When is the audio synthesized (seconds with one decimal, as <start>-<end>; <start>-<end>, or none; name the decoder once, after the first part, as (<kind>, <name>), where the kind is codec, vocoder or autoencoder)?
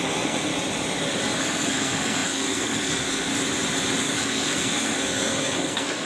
0.0-0.5 (codec, SNAC); 1.4-3.3; 4.0-6.1